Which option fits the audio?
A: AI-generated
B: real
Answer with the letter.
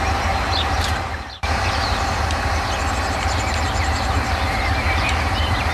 A